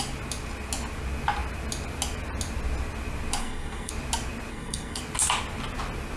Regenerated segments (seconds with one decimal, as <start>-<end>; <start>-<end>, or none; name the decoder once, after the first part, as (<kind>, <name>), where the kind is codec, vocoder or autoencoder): 3.4-3.9 (codec, SNAC); 4.5-5.0